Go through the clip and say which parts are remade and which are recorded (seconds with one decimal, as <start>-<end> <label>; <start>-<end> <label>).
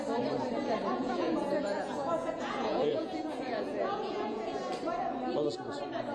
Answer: 0.0-0.9 recorded; 0.9-4.6 remade; 4.6-6.1 recorded